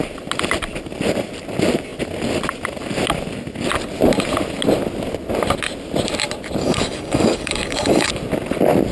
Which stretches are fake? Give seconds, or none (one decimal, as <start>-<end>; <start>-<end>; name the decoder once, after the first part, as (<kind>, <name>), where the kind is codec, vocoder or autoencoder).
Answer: 6.6-8.1 (codec, DAC)